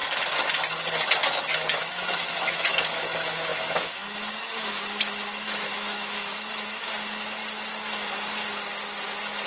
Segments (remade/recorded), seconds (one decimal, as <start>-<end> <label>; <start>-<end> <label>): 0.0-1.2 recorded; 1.2-7.4 remade; 7.4-9.5 recorded

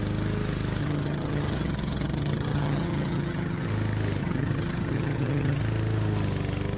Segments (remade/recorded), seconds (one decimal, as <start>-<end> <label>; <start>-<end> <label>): 0.0-0.8 recorded; 0.8-3.7 remade; 3.7-4.2 recorded; 4.2-5.6 remade; 5.6-6.8 recorded

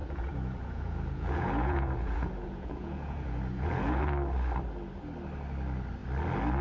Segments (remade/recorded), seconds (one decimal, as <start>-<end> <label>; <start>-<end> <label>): 0.0-4.0 remade; 4.0-6.6 recorded

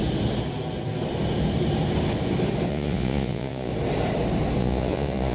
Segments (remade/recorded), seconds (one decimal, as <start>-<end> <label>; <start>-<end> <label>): 0.0-2.7 recorded; 2.7-3.7 remade; 3.7-4.6 recorded; 4.6-5.3 remade

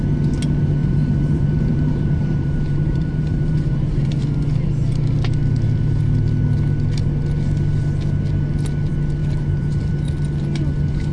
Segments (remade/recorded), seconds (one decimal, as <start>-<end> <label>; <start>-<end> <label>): 0.0-0.8 recorded; 0.8-4.2 remade; 4.2-9.2 recorded; 9.2-9.9 remade; 9.9-11.1 recorded